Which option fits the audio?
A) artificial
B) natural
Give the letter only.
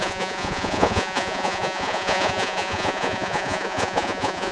A